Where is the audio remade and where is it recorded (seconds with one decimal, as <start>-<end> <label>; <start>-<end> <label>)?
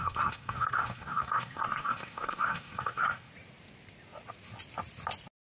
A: 0.0-3.3 remade; 3.3-5.5 recorded